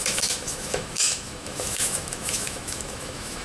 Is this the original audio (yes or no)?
no